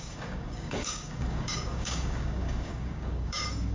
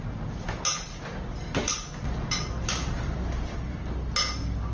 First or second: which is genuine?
second